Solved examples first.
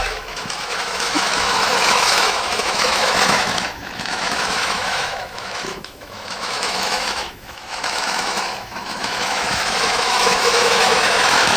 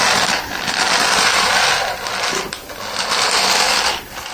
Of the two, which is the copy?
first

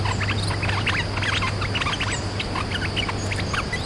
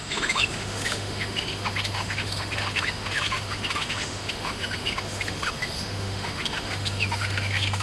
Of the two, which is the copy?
second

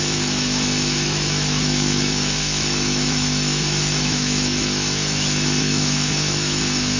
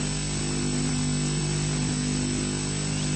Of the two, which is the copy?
first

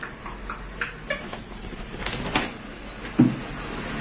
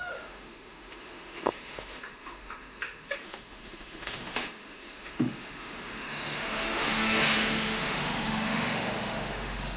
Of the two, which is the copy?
second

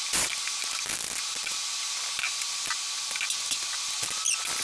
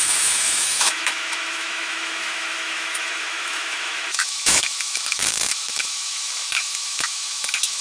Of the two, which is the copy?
second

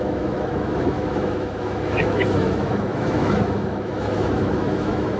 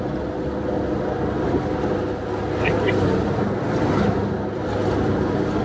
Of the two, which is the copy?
first